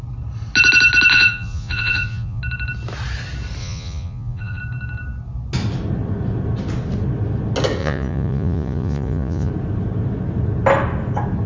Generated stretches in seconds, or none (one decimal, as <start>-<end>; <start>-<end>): 1.1-2.4; 3.6-4.6; 7.8-9.5